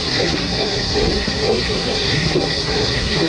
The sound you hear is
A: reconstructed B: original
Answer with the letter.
A